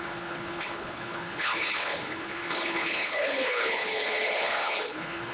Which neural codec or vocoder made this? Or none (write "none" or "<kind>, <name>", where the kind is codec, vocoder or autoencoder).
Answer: codec, HILCodec